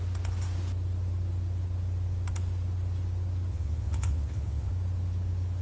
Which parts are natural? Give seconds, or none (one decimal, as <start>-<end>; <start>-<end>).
0.0-3.5; 4.7-5.6